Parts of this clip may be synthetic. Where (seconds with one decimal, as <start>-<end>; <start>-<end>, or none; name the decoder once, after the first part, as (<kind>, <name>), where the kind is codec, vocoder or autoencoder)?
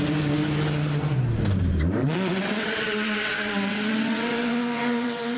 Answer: 2.0-5.4 (vocoder, WaveNeXt)